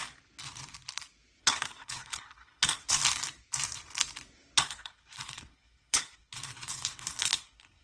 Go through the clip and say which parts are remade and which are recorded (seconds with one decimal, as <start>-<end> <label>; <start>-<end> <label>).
0.0-1.4 recorded; 1.4-3.0 remade; 3.0-4.6 recorded; 4.6-7.8 remade